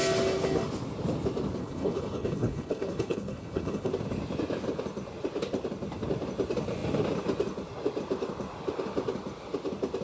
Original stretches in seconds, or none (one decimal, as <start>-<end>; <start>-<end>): 0.0-1.6; 3.9-10.0